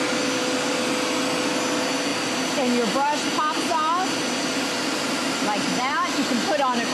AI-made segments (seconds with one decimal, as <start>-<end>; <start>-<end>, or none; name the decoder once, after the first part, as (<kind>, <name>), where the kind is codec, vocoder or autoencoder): none